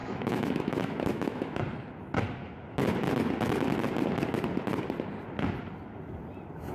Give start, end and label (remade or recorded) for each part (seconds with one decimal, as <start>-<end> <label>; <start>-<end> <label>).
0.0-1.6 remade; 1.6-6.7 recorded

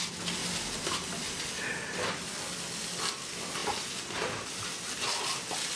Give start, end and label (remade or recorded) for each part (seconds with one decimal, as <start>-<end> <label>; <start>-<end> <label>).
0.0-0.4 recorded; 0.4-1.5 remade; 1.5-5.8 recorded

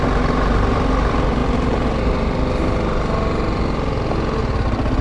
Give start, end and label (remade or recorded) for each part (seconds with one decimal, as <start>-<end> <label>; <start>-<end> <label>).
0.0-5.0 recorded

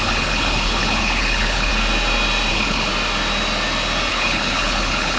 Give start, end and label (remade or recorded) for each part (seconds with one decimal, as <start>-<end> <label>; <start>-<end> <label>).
0.0-1.7 remade; 1.7-2.5 recorded; 2.5-2.9 remade; 2.9-4.1 recorded; 4.1-5.2 remade

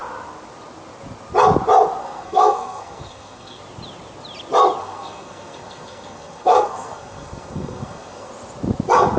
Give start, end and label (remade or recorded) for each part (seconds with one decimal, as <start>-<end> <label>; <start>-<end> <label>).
0.0-2.0 recorded; 2.0-3.6 remade; 3.6-4.8 recorded; 4.8-8.3 remade; 8.3-9.2 recorded

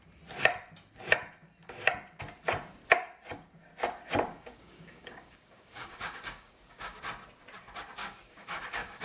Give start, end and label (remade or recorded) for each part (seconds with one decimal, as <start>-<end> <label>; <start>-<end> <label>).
0.0-4.3 recorded; 4.3-7.0 remade; 7.0-8.0 recorded; 8.0-9.0 remade

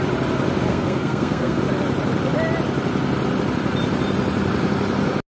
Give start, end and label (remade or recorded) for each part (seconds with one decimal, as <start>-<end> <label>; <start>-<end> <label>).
0.0-0.7 recorded; 0.7-1.6 remade; 1.6-5.3 recorded